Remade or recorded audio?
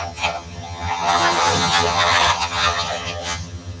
remade